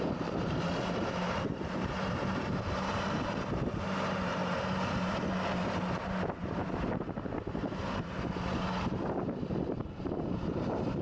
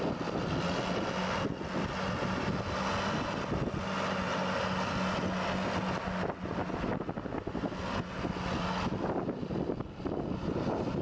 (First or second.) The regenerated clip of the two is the first